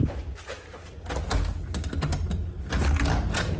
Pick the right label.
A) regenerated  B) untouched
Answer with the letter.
B